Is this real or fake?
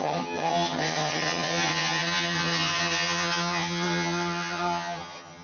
fake